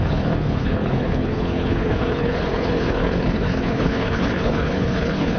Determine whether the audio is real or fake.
fake